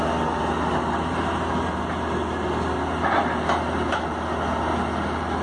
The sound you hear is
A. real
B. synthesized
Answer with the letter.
A